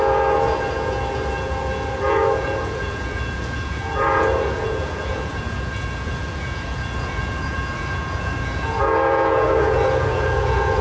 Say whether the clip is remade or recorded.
remade